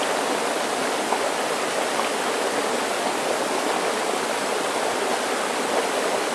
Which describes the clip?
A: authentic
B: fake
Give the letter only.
B